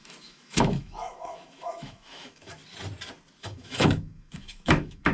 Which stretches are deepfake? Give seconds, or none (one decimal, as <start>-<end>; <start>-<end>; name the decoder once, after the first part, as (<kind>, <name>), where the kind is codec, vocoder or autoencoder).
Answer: 0.0-2.6 (autoencoder, DAC-VAE); 3.4-5.1